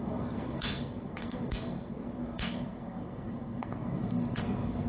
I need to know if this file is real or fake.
fake